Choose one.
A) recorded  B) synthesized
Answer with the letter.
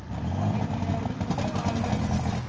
A